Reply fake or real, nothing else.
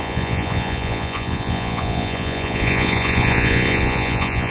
fake